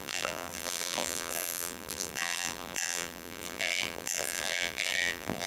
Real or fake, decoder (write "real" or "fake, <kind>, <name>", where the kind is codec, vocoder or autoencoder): fake, vocoder, BigVGAN v2